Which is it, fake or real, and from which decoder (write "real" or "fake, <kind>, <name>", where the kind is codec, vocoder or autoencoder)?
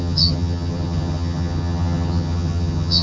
fake, vocoder, HiFi-GAN